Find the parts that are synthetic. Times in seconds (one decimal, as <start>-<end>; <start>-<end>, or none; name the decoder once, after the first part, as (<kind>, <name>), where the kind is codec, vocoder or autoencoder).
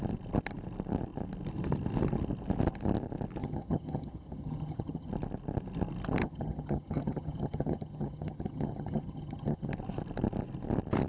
3.4-5.1 (vocoder, HiFi-GAN); 6.2-9.7